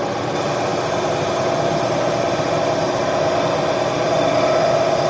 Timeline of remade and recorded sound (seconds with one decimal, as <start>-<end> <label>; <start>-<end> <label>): 0.0-5.1 recorded